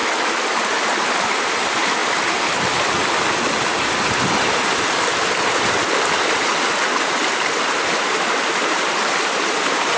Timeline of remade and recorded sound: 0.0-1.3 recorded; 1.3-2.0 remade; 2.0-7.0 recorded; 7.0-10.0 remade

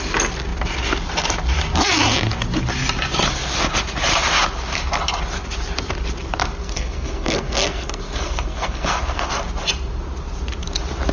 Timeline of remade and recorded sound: 0.0-6.6 recorded; 6.6-9.3 remade; 9.3-11.1 recorded

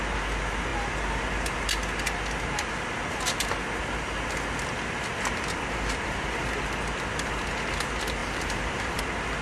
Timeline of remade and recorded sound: 0.0-8.2 recorded; 8.2-9.0 remade; 9.0-9.4 recorded

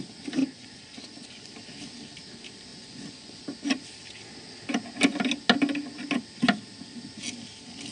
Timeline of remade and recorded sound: 0.0-0.4 recorded; 0.4-1.5 remade; 1.5-2.7 recorded; 2.7-3.4 remade; 3.4-7.9 recorded

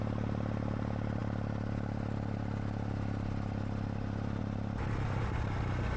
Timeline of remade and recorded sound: 0.0-6.0 recorded

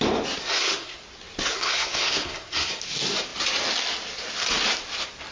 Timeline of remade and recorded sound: 0.0-0.4 recorded; 0.4-1.0 remade; 1.0-1.5 recorded; 1.5-2.8 remade; 2.8-5.3 recorded